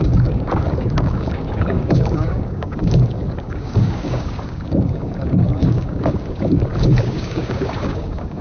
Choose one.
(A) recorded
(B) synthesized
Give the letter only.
B